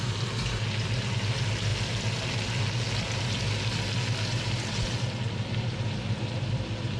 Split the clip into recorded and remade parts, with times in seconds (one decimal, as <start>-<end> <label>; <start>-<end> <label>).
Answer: 0.0-7.0 recorded